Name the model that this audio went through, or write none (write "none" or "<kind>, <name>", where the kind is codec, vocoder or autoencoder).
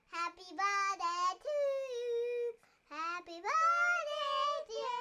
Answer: none